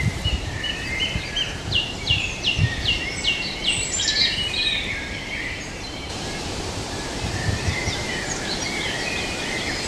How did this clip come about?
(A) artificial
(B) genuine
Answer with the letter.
A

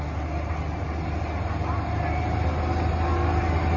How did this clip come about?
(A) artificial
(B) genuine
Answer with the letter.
B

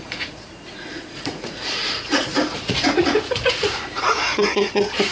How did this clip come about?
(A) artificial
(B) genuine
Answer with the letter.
A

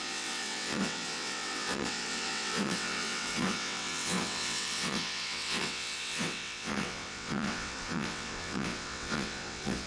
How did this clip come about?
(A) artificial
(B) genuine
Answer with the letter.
A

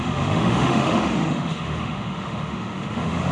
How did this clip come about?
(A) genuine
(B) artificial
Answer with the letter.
B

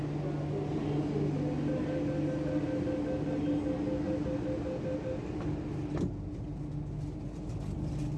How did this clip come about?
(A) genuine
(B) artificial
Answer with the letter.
A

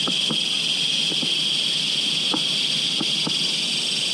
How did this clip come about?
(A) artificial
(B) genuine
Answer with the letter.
B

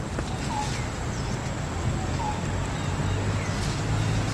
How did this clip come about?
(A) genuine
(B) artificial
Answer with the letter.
A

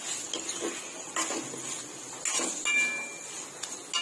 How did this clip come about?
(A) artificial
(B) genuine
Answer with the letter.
B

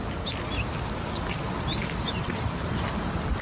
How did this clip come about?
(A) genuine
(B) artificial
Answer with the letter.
A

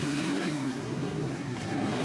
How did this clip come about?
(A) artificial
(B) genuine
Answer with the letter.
A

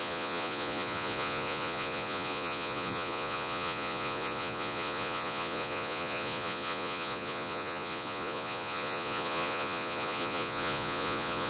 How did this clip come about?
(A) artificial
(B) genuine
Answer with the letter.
A